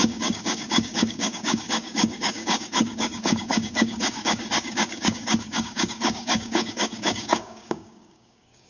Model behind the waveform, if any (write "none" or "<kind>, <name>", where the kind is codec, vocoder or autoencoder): codec, DAC